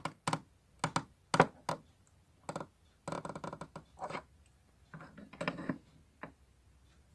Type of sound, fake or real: real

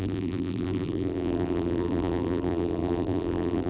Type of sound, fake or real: fake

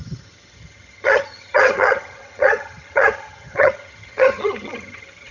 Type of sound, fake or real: fake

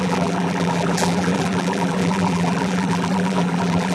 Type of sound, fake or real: fake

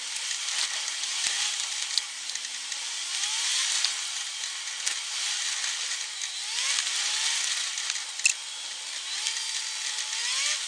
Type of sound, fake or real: real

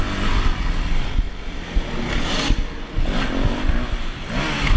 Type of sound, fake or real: real